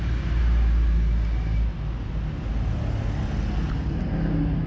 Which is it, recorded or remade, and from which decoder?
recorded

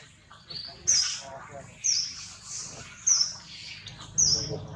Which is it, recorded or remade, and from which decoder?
recorded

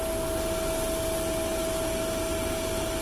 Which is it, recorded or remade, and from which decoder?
recorded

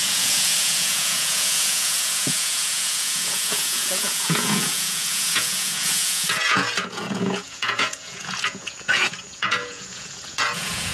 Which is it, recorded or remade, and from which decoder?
remade, vocoder, Vocos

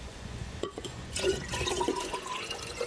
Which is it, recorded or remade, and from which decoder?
remade, vocoder, Vocos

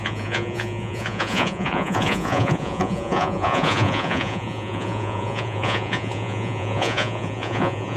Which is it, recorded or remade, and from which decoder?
remade, vocoder, Vocos